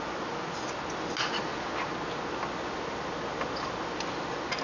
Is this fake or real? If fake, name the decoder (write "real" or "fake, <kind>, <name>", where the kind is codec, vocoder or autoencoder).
real